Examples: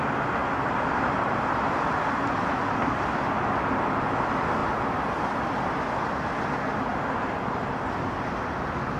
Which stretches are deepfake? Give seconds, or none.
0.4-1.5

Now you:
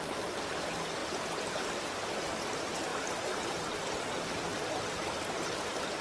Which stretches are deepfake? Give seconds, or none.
none

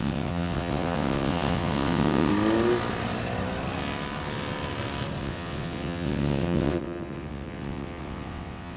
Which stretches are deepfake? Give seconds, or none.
0.0-2.3; 5.2-8.8

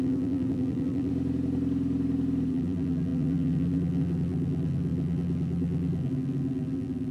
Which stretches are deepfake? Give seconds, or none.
0.0-1.1; 2.5-7.1

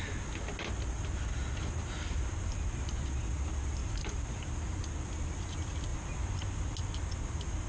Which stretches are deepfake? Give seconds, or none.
1.6-3.3; 3.8-4.8; 5.9-6.5

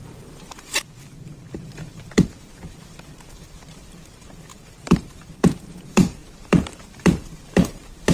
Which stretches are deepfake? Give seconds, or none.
0.0-8.1

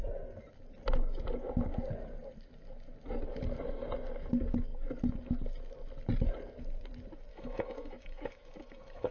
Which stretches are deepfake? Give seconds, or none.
7.3-9.1

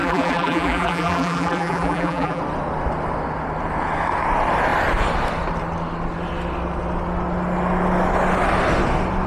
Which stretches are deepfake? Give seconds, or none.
0.0-2.4